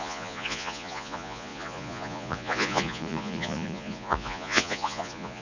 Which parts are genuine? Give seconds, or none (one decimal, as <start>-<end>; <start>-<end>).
none